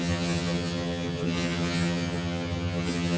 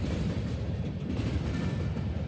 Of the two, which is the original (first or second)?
second